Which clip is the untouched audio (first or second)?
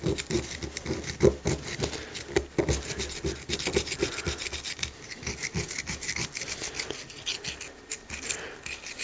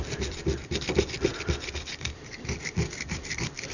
first